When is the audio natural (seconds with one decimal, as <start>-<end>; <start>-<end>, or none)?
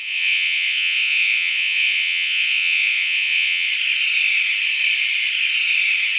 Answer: 3.7-6.2